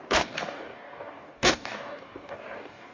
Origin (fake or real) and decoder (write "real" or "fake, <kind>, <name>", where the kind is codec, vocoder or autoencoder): fake, codec, DAC